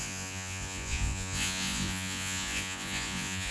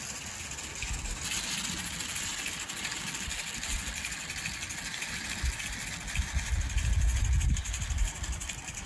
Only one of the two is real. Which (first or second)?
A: second